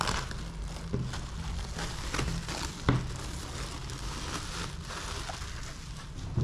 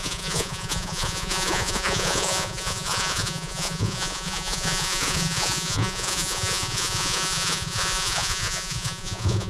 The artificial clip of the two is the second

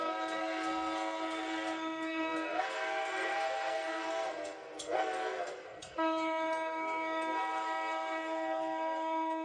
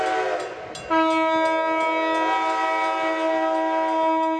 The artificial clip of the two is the first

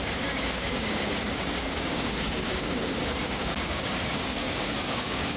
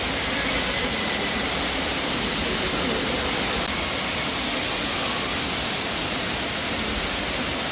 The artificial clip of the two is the first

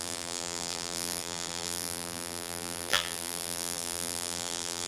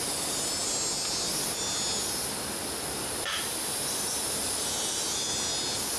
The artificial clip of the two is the first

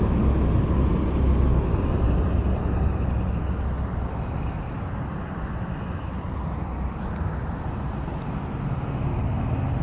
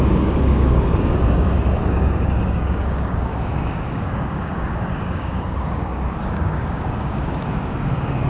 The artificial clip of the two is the second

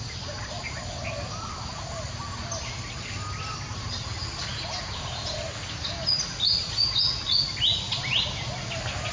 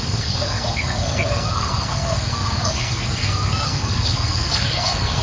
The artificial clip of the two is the second